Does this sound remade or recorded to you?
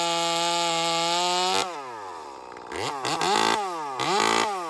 recorded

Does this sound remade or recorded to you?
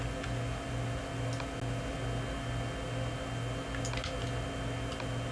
recorded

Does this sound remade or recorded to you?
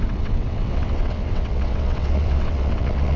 remade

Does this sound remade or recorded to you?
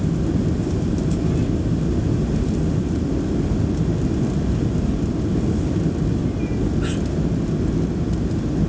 recorded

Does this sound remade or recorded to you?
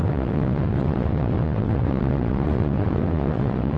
remade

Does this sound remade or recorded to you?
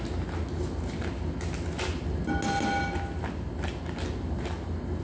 recorded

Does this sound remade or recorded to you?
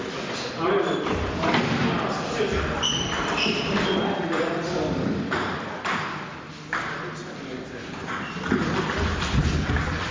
recorded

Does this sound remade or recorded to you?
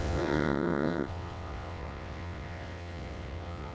remade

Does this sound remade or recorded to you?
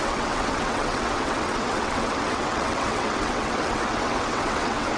remade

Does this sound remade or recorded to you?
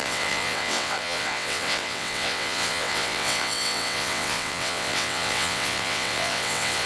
remade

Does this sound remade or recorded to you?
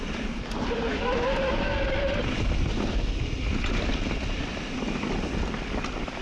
recorded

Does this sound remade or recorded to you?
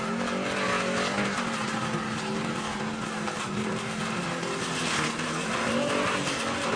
recorded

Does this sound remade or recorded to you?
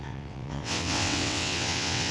remade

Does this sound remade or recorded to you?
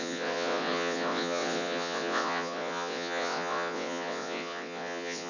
remade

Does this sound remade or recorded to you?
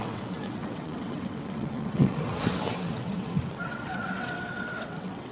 remade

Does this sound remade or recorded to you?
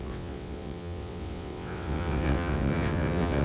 remade